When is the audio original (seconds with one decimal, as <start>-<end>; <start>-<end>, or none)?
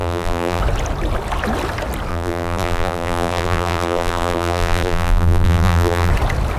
0.6-2.1; 6.1-6.6